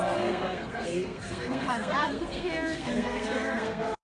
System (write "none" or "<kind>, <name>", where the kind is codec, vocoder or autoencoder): codec, SNAC